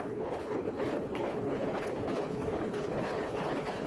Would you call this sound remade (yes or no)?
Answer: yes